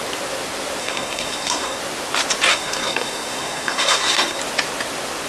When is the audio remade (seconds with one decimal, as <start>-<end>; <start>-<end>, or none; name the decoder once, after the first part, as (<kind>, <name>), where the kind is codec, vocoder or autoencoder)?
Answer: 0.8-1.8 (codec, SNAC); 2.5-4.4